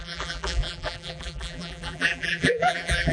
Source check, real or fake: fake